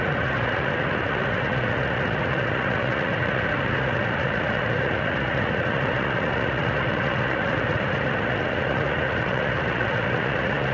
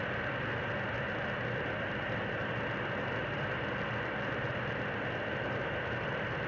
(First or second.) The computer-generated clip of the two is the first